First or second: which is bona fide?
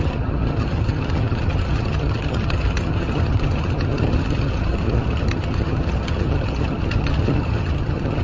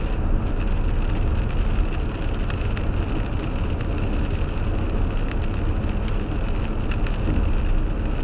second